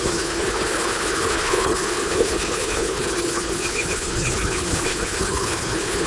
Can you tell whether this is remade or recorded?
remade